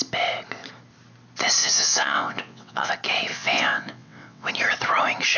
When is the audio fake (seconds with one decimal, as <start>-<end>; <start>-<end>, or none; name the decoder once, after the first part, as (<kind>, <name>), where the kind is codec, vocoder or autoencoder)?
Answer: 1.6-2.9 (vocoder, WaveNeXt); 3.3-4.5